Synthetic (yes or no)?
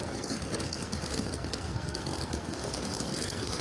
yes